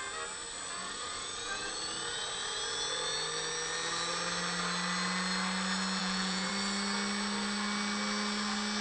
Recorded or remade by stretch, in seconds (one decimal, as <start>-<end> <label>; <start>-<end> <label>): 0.0-0.8 recorded; 0.8-1.7 remade; 1.7-6.0 recorded; 6.0-6.5 remade; 6.5-8.8 recorded